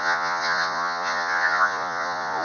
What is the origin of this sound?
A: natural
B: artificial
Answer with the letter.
B